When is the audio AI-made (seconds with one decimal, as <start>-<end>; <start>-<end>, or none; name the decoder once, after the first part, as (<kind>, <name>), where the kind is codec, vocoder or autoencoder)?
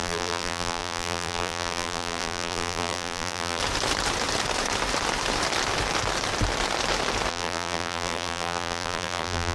0.0-3.6 (vocoder, BigVGAN v2); 7.3-9.5